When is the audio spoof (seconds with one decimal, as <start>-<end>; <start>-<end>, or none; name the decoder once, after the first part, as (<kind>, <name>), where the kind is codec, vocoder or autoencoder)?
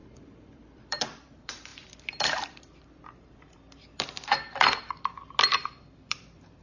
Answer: 0.0-5.2 (vocoder, BigVGAN v2); 5.7-6.6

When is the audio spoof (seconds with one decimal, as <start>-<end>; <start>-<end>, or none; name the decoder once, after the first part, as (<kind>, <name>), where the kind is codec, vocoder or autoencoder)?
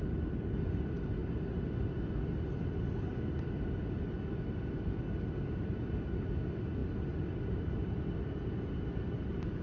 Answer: 6.8-9.6 (vocoder, BigVGAN v2)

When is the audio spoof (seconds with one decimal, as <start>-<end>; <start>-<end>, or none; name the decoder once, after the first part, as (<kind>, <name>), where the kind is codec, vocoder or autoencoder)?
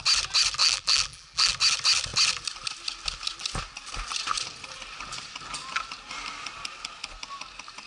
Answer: 0.6-1.5 (vocoder, BigVGAN v2)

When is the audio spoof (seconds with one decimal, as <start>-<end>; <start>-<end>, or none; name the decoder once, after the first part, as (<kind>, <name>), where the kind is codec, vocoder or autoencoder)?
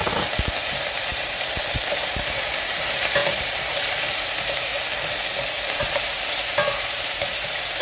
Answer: 0.0-4.7 (vocoder, BigVGAN v2); 5.8-7.8